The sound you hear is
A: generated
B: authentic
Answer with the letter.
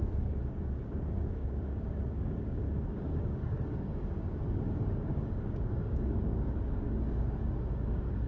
A